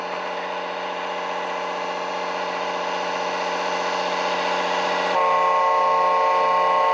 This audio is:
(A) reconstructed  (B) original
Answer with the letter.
B